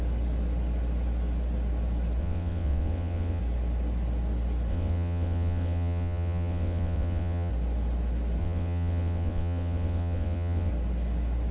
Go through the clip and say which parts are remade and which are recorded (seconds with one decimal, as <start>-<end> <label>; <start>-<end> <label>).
0.0-2.2 recorded; 2.2-3.4 remade; 3.4-4.7 recorded; 4.7-7.5 remade; 7.5-8.4 recorded; 8.4-10.7 remade; 10.7-11.5 recorded